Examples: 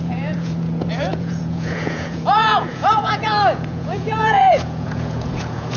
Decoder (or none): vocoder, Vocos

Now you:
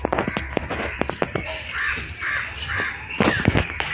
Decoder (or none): none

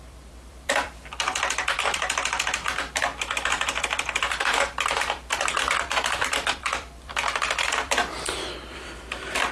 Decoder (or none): vocoder, BigVGAN v2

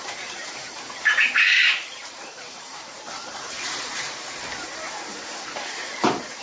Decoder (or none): vocoder, BigVGAN v2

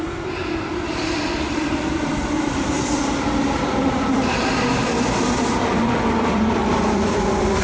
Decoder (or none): vocoder, BigVGAN v2